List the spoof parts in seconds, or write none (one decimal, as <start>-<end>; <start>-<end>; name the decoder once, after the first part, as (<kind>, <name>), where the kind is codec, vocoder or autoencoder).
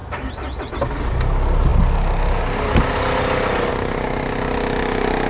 none